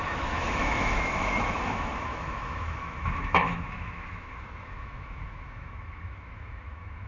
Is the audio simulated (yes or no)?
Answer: yes